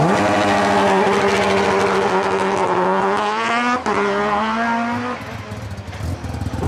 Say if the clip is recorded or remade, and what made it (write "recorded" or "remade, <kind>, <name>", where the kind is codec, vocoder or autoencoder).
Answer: recorded